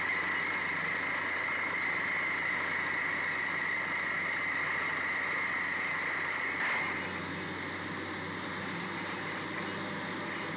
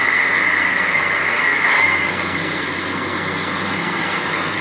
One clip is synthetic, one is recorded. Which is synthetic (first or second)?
second